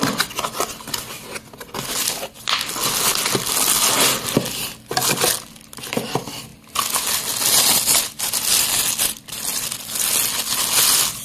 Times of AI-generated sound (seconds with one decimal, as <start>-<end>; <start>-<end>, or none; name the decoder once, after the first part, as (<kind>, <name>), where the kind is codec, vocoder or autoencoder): none